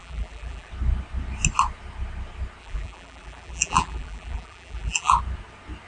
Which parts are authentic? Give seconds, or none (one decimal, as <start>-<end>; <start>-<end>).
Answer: 0.7-2.6; 5.2-5.9